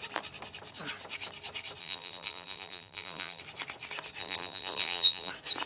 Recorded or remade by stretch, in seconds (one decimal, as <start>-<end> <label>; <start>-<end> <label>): 0.0-1.8 recorded; 1.8-3.4 remade; 3.4-4.2 recorded; 4.2-5.3 remade; 5.3-5.7 recorded